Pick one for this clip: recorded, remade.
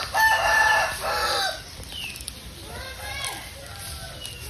recorded